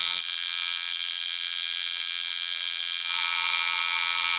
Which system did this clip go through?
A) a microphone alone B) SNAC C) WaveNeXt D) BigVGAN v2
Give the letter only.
D